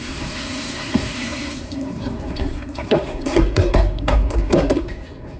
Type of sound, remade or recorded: remade